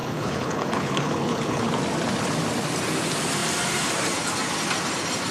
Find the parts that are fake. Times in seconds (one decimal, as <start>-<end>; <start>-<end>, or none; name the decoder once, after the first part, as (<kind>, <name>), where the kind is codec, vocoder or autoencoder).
0.0-1.7 (codec, HILCodec)